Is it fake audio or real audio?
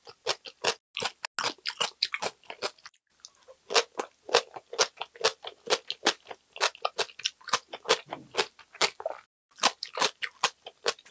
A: real